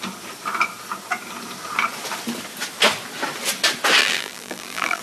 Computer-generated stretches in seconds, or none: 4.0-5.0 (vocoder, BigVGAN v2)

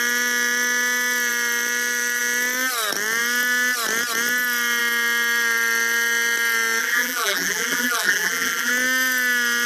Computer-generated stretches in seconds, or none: 6.8-8.7 (vocoder, BigVGAN v2)

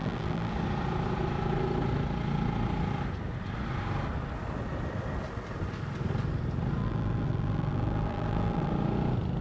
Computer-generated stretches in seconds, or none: 0.0-0.5 (vocoder, BigVGAN v2); 6.8-8.7